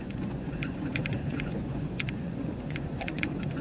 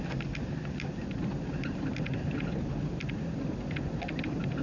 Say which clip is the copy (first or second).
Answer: first